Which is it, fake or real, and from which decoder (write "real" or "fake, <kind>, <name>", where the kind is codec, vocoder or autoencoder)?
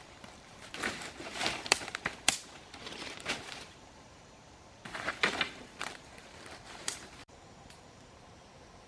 fake, vocoder, BigVGAN v2